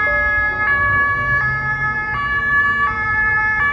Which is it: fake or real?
real